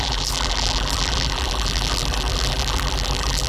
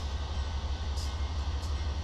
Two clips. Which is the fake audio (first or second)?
first